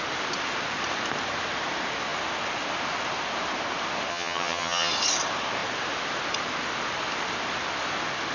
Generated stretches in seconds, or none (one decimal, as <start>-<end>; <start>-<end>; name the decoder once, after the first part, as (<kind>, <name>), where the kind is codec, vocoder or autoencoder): 4.1-4.9 (vocoder, HiFi-GAN)